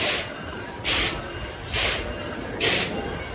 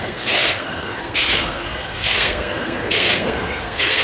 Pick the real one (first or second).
first